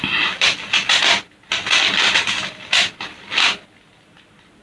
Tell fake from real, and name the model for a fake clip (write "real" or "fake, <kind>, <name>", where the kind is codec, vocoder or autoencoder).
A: real